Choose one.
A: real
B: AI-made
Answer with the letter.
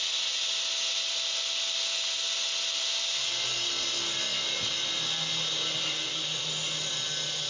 A